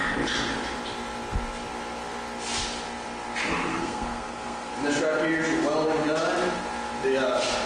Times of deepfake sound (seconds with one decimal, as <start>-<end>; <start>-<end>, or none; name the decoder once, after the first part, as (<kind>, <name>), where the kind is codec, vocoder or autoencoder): 3.7-4.7 (codec, SNAC)